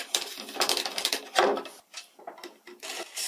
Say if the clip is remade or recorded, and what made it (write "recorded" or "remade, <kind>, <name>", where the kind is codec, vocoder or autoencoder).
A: recorded